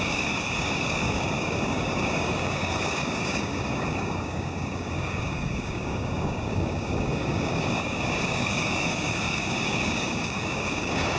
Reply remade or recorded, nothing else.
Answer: remade